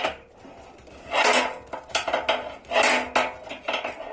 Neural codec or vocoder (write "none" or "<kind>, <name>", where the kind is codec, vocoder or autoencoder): none